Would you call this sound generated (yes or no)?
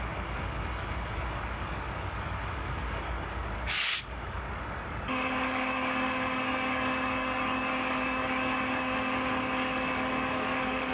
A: yes